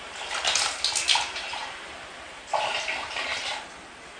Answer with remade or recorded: recorded